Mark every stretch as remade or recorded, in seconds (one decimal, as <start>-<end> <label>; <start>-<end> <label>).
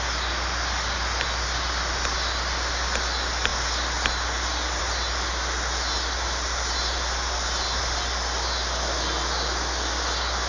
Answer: 0.0-10.5 recorded